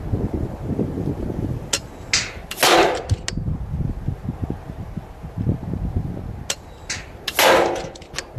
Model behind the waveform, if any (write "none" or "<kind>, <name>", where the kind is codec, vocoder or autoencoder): none